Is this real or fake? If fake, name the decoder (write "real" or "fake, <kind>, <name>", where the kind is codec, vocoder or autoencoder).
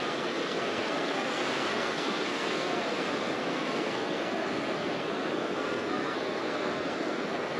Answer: fake, codec, SNAC